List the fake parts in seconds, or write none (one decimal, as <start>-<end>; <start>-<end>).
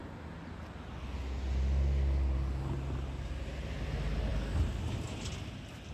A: none